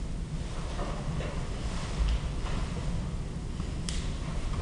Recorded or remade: recorded